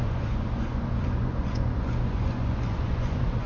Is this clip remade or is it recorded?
remade